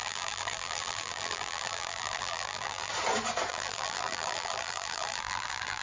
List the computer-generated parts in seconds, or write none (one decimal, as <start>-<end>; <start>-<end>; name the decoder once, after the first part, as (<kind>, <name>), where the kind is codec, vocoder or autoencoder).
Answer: 0.0-2.9 (vocoder, BigVGAN v2); 3.5-5.8